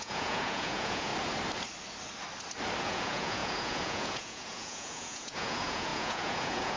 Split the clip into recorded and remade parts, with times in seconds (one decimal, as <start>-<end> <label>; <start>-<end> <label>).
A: 0.0-1.1 remade; 1.1-2.8 recorded; 2.8-6.8 remade